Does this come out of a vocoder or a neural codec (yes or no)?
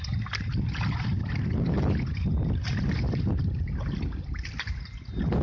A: no